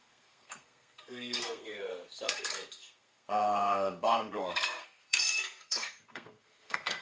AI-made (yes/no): yes